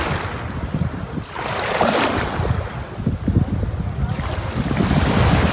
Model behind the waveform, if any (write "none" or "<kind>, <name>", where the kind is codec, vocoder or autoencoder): none